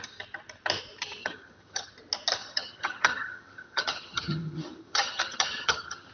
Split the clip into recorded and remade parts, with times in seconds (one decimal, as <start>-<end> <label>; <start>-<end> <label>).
0.0-1.2 recorded; 1.2-1.9 remade; 1.9-2.4 recorded; 2.4-6.1 remade